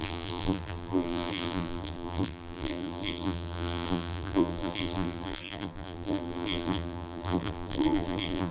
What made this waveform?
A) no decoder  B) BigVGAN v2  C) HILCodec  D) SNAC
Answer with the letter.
B